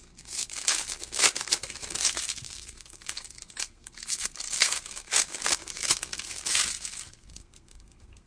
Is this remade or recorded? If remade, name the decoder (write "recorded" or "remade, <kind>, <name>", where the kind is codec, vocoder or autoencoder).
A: remade, codec, SNAC